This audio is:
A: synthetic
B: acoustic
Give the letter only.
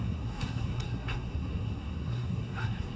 A